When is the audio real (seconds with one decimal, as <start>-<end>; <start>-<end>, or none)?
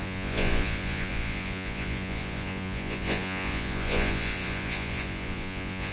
none